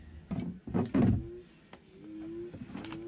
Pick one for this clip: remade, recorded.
recorded